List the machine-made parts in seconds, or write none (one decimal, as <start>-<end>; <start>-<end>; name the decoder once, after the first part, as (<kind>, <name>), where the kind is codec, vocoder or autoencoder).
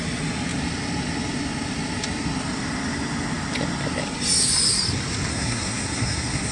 5.3-6.5 (codec, SNAC)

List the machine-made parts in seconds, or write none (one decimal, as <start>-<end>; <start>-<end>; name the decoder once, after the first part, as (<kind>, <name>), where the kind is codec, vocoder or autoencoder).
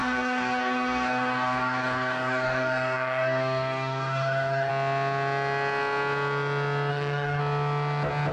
0.0-4.7 (codec, DAC); 6.9-7.4